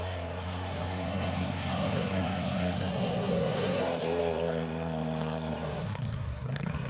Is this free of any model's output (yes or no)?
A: no